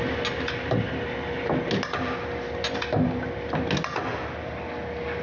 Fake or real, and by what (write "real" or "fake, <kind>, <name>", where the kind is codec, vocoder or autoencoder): real